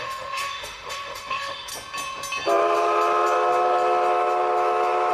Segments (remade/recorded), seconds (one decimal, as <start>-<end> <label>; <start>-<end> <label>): 0.0-1.7 remade; 1.7-5.1 recorded